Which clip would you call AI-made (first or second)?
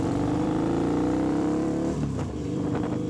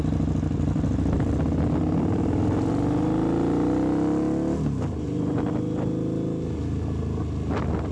first